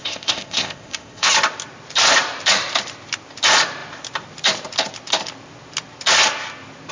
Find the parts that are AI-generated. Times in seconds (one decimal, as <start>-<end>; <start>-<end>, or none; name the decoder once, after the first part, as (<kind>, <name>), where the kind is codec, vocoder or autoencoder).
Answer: 0.0-1.3 (codec, ZipCodec)